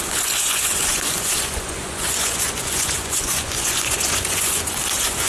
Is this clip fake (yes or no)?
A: yes